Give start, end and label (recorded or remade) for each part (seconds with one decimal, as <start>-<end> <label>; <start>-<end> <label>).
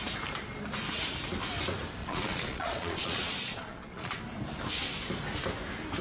0.0-2.0 recorded; 2.0-4.2 remade; 4.2-6.0 recorded